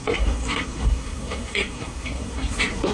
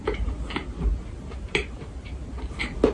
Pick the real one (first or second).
second